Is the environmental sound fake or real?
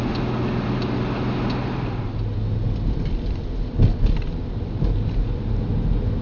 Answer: real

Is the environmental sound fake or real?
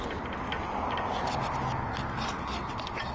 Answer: real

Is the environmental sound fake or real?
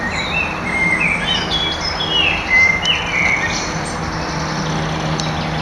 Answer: real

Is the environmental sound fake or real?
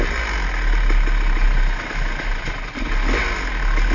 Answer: real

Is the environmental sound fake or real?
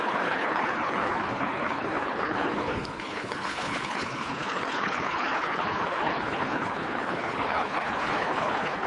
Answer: fake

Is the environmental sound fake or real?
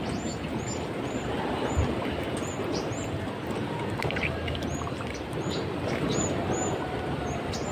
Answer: real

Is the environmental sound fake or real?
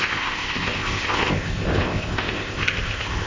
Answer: fake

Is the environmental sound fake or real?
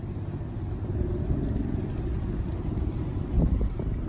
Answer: real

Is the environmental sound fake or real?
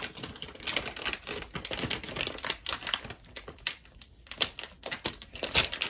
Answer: real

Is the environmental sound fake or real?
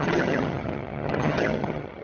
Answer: fake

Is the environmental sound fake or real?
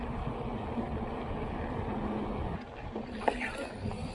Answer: real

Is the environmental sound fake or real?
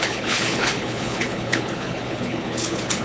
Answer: fake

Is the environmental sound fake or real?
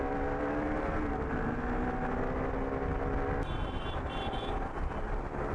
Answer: real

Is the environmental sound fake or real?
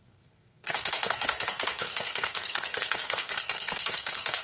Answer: fake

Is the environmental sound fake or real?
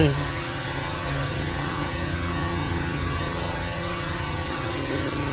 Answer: fake